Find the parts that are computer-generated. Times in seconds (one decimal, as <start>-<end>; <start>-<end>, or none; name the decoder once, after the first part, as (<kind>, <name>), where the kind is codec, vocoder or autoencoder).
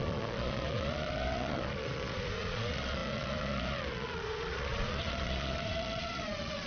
0.0-6.7 (vocoder, Vocos)